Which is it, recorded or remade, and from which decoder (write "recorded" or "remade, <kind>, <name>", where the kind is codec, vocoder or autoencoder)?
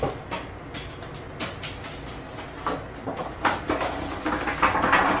recorded